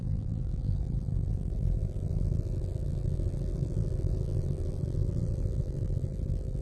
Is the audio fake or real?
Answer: fake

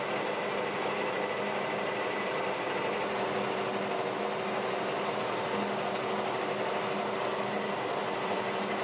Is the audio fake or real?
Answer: real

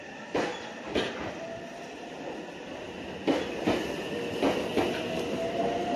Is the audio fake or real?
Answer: real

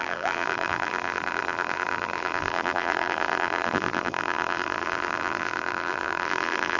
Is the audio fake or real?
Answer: fake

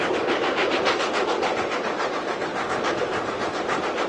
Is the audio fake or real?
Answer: real